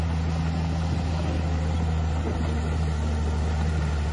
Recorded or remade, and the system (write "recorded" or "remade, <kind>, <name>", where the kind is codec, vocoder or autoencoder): recorded